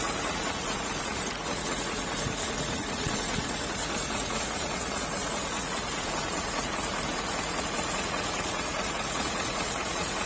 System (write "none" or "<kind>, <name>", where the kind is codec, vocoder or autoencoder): vocoder, Vocos